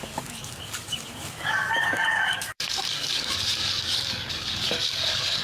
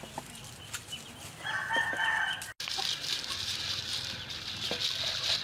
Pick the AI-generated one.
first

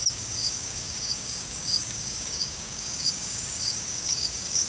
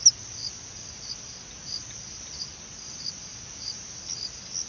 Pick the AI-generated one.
first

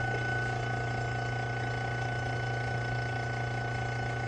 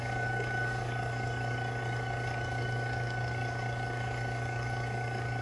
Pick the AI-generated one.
second